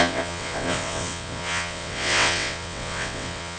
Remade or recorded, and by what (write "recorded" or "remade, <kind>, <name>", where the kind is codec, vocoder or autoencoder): remade, vocoder, WaveNeXt